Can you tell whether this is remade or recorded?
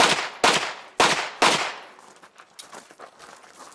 recorded